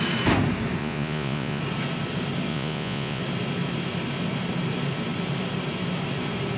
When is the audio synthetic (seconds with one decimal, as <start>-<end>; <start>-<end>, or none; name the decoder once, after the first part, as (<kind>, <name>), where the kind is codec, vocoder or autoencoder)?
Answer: 0.8-1.6 (vocoder, Vocos); 2.5-3.2